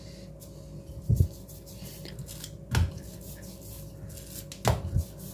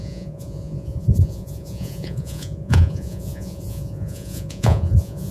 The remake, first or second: second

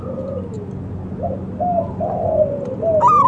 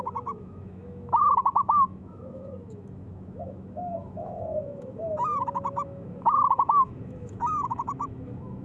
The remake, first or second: second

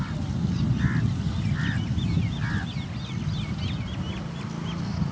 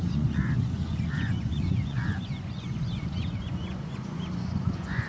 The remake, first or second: second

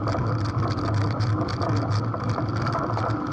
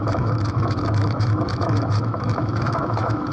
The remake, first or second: second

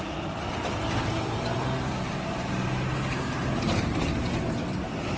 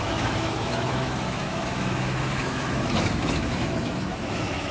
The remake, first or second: second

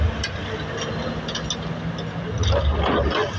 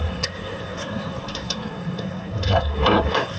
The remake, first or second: second